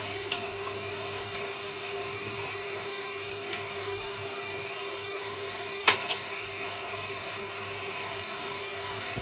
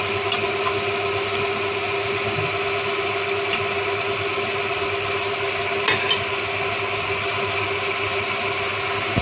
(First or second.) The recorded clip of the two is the second